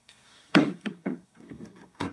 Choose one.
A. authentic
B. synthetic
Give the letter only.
B